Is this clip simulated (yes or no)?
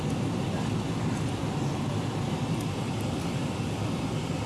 no